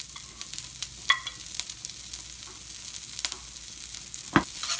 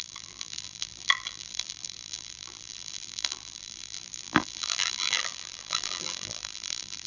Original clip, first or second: first